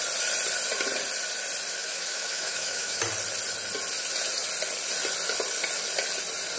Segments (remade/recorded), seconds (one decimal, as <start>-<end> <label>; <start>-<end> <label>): 0.0-1.8 recorded; 1.8-3.0 remade; 3.0-6.6 recorded